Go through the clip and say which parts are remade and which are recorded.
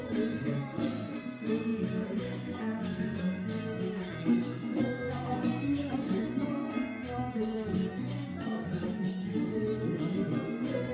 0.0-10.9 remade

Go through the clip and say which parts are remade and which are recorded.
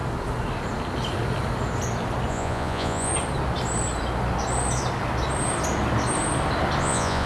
0.0-2.3 recorded; 2.3-3.1 remade; 3.1-6.8 recorded; 6.8-7.3 remade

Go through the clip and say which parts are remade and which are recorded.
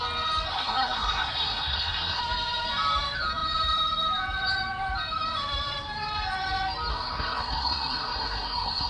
0.0-0.5 recorded; 0.5-2.2 remade; 2.2-6.9 recorded; 6.9-8.9 remade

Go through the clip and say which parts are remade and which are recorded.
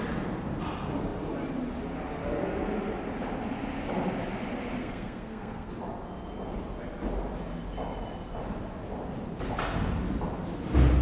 0.0-4.8 recorded; 4.8-5.7 remade; 5.7-11.0 recorded